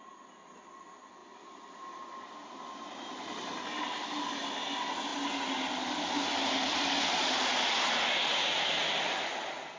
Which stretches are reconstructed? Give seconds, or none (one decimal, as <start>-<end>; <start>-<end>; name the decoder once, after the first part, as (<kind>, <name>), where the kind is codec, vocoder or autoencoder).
none